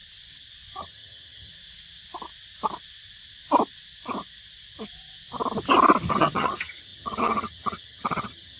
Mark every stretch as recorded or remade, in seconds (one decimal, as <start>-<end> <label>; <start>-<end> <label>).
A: 0.0-0.8 recorded; 0.8-1.5 remade; 1.5-6.1 recorded; 6.1-8.6 remade